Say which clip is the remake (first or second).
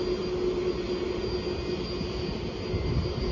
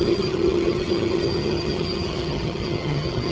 second